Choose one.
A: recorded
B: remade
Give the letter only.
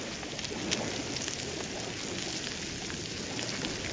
A